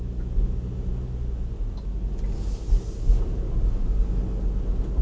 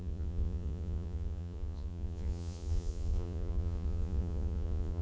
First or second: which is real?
first